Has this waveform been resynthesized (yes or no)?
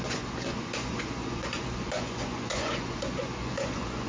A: yes